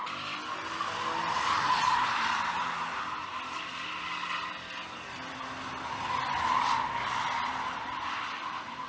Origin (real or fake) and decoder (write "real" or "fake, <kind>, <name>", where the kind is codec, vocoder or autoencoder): real